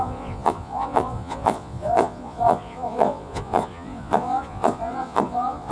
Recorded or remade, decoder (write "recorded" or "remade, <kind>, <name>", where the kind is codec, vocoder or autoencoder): remade, vocoder, Vocos